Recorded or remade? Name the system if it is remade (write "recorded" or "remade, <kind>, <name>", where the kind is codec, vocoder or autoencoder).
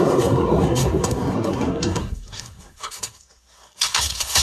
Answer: remade, codec, SNAC